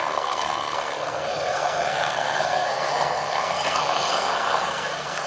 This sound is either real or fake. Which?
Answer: fake